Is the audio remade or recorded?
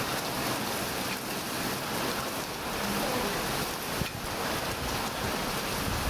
recorded